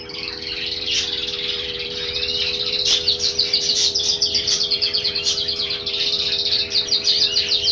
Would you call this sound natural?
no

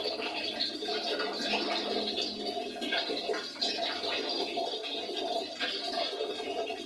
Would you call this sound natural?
yes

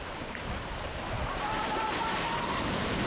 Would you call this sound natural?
no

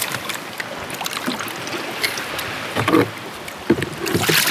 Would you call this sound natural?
yes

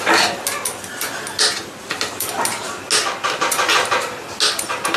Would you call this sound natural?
yes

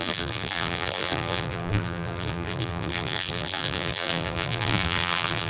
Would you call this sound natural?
no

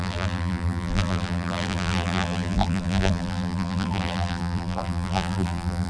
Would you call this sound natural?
no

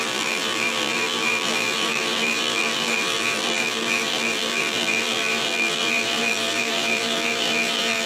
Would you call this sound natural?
no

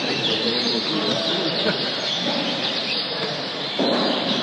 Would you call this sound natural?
no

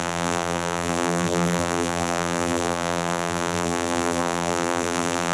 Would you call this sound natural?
no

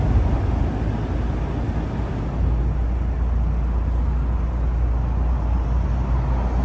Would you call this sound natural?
yes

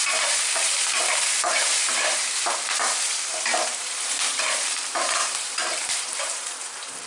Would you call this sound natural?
no